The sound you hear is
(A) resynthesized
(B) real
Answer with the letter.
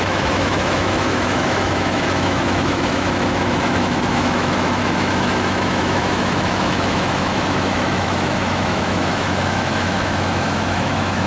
A